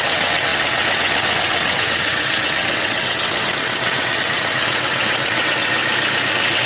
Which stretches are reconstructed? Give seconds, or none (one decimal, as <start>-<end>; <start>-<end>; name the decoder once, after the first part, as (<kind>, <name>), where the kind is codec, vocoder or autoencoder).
0.0-5.8 (vocoder, WaveNeXt); 6.3-6.7